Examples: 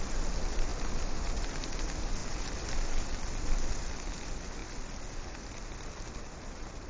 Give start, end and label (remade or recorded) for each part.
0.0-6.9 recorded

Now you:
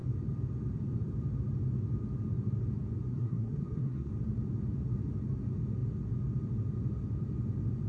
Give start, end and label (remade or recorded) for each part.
0.0-3.1 recorded; 3.1-4.1 remade; 4.1-7.9 recorded

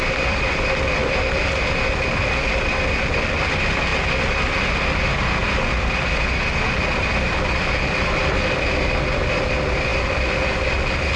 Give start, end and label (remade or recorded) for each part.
0.0-11.2 recorded

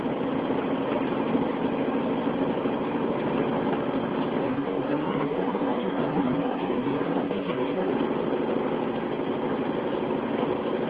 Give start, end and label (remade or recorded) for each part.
0.0-4.4 recorded; 4.4-7.9 remade; 7.9-10.9 recorded

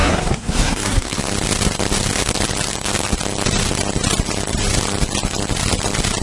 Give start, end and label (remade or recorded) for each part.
0.0-1.2 remade; 1.2-6.2 recorded

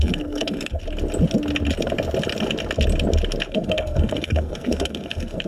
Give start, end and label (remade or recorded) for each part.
0.0-0.8 remade; 0.8-3.5 recorded; 3.5-5.5 remade

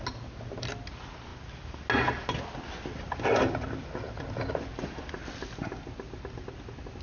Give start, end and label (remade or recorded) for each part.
0.0-7.0 recorded

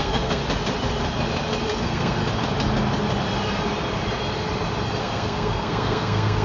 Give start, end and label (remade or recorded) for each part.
0.0-0.4 remade; 0.4-1.8 recorded; 1.8-2.2 remade; 2.2-5.0 recorded; 5.0-6.4 remade